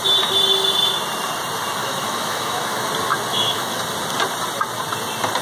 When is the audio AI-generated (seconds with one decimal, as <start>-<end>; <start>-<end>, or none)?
1.8-2.9; 3.3-3.8

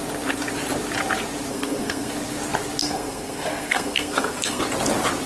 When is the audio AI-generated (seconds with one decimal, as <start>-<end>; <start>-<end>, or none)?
1.5-2.1; 2.8-4.6

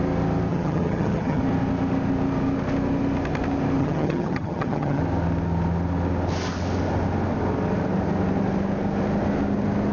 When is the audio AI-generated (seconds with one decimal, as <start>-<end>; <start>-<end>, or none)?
0.5-1.4; 3.8-5.0

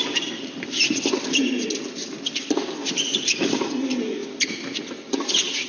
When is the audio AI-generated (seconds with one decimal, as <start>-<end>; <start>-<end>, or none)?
none

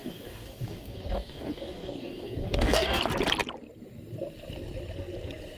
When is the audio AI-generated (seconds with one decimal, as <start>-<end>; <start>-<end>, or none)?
0.0-3.0

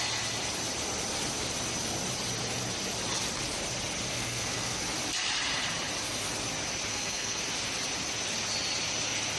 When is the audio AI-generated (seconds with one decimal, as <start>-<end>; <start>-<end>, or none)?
4.1-4.8; 6.9-7.4

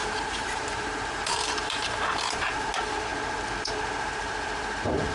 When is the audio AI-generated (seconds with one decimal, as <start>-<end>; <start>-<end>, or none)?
0.0-2.7